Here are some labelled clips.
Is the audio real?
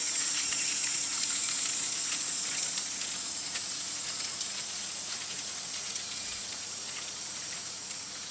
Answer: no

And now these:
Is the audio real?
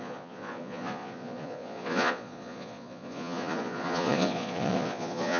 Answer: no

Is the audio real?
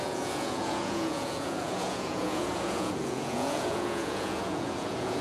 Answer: no